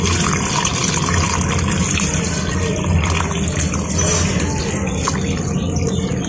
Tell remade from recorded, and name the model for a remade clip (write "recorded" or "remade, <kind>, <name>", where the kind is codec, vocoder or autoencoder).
recorded